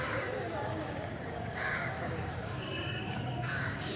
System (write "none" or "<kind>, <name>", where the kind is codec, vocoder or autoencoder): codec, DAC